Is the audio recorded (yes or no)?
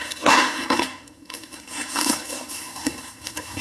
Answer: no